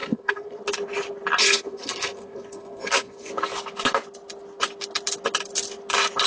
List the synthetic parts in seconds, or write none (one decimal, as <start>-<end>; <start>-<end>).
0.0-0.6; 1.4-3.3